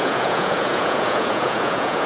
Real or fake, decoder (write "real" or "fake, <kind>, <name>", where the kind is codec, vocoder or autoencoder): fake, vocoder, Vocos